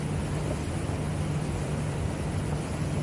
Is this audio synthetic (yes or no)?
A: no